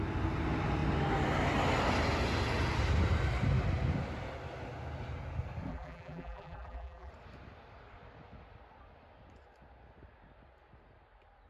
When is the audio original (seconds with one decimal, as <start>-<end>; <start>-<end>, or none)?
0.0-5.7; 7.1-11.5